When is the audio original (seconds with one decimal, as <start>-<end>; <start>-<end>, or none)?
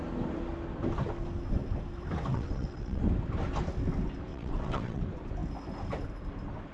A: 0.0-2.3; 3.0-4.3; 5.0-6.7